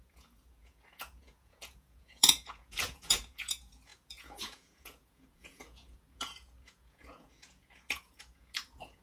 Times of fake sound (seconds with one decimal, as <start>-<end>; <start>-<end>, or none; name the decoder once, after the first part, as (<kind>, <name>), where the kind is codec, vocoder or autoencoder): 0.0-9.0 (vocoder, Vocos)